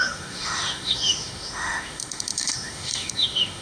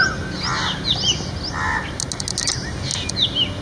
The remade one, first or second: first